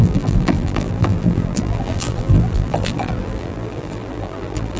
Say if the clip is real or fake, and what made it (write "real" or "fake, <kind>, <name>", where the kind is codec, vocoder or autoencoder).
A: fake, vocoder, BigVGAN v2